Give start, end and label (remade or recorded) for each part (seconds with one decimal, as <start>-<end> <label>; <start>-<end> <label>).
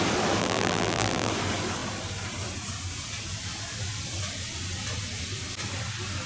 0.0-0.4 recorded; 0.4-1.3 remade; 1.3-6.3 recorded